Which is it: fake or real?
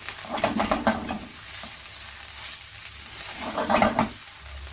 real